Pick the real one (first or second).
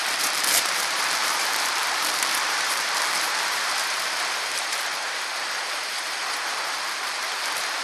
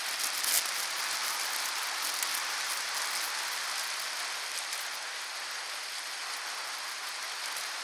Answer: second